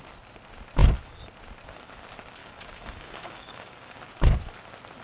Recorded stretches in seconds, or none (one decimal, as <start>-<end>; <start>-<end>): 0.0-2.4; 4.0-5.0